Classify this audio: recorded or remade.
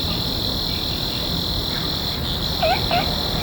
recorded